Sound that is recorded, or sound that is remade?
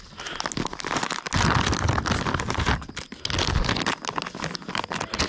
recorded